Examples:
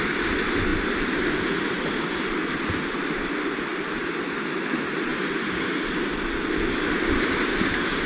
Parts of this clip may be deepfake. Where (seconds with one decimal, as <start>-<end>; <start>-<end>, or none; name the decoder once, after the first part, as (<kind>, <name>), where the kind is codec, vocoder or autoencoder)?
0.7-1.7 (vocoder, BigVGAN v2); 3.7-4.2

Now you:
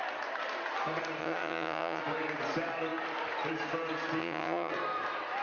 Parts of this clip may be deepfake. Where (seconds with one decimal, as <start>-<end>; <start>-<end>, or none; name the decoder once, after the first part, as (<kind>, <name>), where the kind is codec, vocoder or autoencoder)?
1.2-2.0 (vocoder, HiFi-GAN); 4.2-4.7

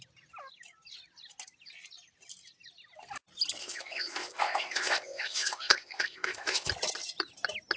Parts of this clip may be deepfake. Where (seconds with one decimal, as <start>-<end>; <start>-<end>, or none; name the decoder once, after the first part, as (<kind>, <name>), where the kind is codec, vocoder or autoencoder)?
3.6-6.7 (codec, ZipCodec)

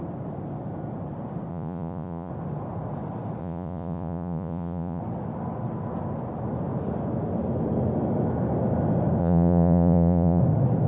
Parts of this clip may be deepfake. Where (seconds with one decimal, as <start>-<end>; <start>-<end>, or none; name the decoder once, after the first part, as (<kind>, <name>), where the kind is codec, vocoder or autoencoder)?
1.5-2.3 (vocoder, Vocos); 3.4-5.0; 9.2-10.4